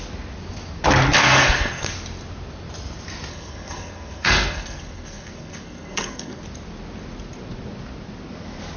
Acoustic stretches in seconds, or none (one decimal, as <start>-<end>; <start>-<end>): 0.0-1.2; 1.9-3.3; 6.4-8.8

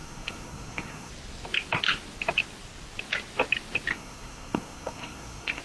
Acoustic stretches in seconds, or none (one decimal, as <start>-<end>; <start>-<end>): 1.1-3.9